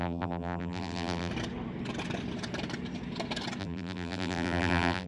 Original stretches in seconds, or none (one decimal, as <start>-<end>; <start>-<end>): 1.3-3.6